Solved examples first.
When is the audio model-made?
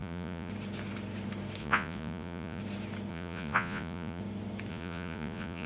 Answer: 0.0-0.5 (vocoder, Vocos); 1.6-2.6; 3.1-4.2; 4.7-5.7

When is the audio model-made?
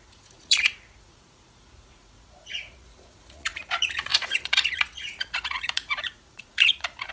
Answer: 0.0-7.1 (vocoder, Vocos)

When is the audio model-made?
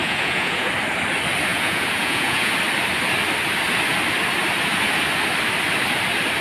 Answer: 0.0-0.7 (vocoder, Vocos); 1.5-2.5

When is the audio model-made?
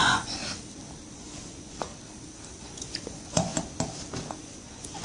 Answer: 0.0-0.4 (vocoder, Vocos); 1.1-1.9; 2.6-3.5; 4.4-5.0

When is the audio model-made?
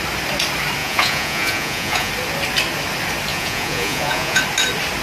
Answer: 0.8-2.1 (vocoder, Vocos); 3.3-4.4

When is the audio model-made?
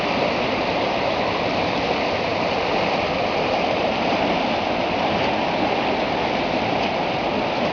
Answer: none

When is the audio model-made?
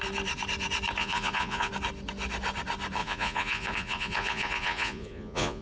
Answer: 1.0-1.7 (vocoder, Vocos); 3.0-5.6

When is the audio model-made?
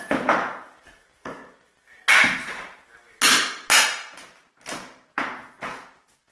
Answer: 0.0-1.4 (vocoder, Vocos); 5.1-6.3